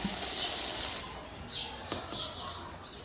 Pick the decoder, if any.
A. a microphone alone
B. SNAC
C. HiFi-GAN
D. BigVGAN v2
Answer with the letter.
A